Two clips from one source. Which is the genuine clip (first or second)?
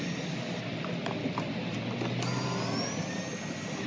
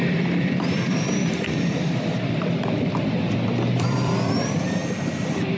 first